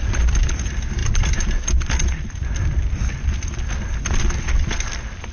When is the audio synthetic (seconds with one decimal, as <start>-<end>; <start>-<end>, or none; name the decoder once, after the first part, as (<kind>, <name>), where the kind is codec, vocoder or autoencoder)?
none